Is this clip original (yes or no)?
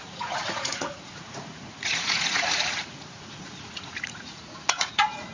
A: no